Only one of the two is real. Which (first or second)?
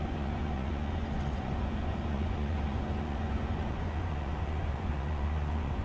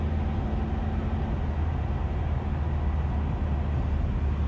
second